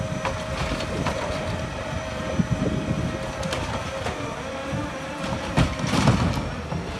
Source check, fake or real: real